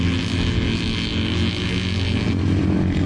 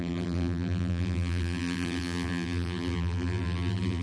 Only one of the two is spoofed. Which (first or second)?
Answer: second